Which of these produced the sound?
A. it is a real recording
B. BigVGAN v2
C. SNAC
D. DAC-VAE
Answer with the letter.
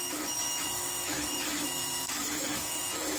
D